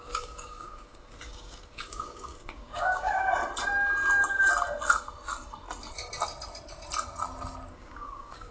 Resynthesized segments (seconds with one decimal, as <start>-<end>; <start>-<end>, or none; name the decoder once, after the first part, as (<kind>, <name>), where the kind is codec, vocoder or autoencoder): 0.0-3.4 (codec, DAC); 7.7-8.5